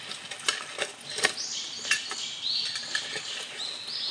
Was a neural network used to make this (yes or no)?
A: no